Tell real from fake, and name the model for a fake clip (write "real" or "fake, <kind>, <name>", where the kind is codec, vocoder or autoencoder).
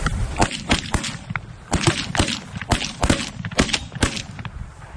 real